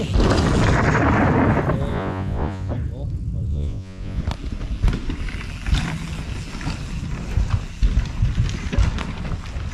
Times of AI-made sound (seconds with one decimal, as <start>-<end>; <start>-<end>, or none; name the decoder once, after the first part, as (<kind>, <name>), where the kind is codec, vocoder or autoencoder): 1.9-2.7 (vocoder, Vocos); 3.5-4.2